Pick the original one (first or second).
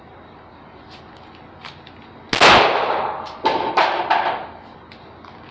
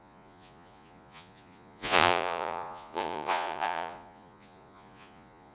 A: first